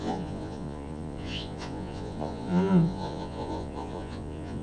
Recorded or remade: remade